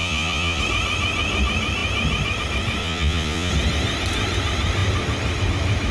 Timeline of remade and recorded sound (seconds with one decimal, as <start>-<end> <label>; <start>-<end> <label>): 0.0-0.6 remade; 0.6-2.8 recorded; 2.8-3.5 remade; 3.5-5.9 recorded